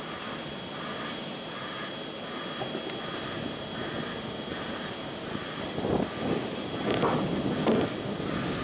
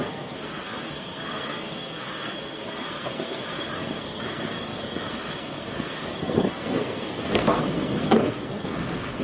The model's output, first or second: second